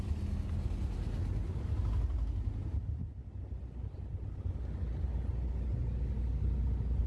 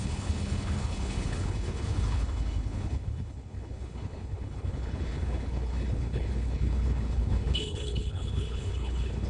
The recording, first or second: first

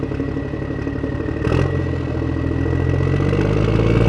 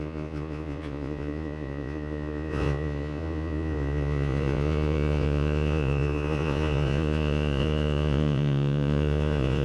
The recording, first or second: first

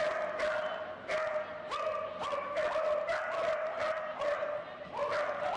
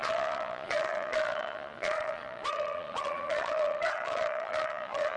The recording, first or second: first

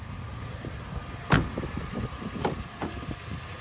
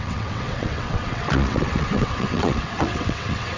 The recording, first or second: first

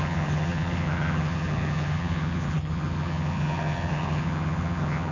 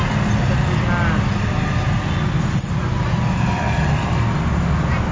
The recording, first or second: second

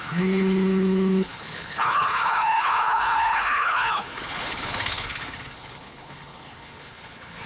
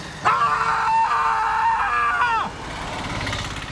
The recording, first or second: second